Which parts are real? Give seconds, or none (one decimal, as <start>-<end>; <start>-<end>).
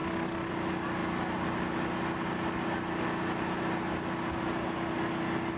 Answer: 0.5-5.6